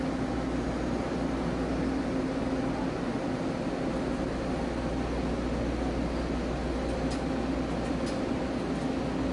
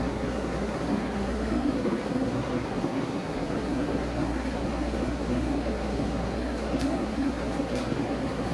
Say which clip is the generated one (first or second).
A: second